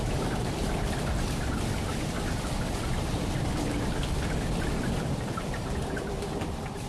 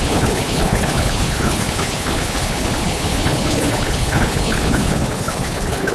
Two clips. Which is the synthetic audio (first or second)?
second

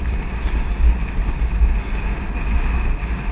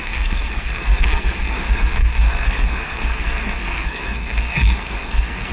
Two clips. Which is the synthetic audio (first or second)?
second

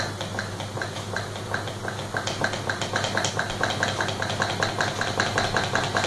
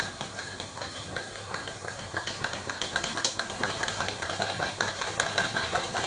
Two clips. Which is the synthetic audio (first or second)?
second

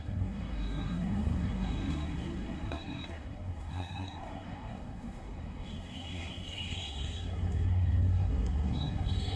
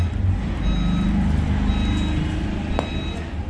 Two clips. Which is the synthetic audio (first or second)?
first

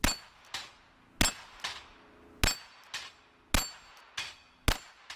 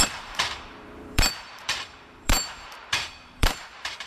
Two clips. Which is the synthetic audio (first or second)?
second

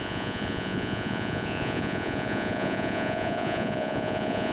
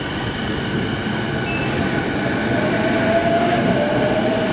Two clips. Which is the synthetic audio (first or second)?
first